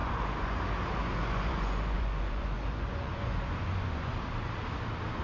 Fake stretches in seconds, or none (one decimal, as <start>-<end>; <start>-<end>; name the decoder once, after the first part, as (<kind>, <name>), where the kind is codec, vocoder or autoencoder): 0.0-0.6 (vocoder, Vocos); 1.0-4.1